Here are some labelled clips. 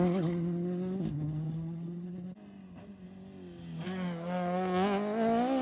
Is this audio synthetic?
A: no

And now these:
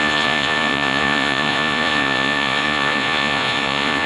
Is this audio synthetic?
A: yes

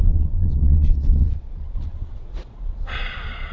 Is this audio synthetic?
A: yes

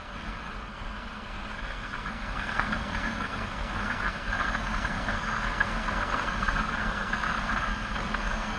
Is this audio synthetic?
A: yes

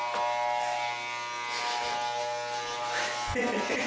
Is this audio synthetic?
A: no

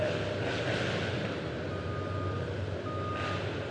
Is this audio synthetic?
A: no